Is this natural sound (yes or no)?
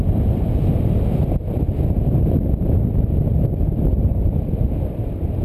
no